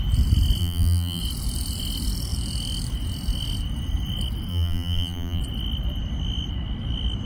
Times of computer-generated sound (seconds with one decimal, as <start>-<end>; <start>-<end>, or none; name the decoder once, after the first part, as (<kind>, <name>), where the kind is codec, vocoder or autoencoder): 0.6-1.2 (vocoder, BigVGAN v2); 4.5-5.4